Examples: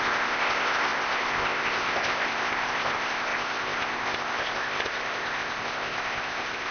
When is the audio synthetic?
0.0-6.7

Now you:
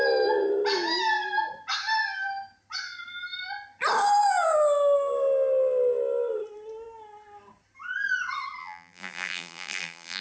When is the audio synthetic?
8.6-10.2

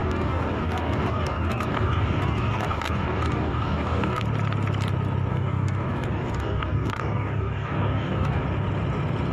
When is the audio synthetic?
0.0-4.2; 5.3-8.4

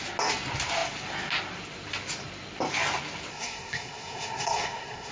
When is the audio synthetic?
3.3-5.1